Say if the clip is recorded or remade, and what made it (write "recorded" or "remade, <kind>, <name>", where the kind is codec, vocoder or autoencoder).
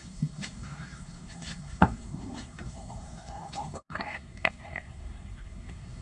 remade, codec, SNAC